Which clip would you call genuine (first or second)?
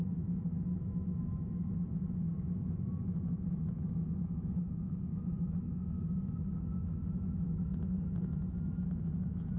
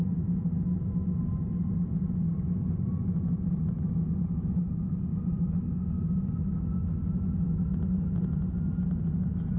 second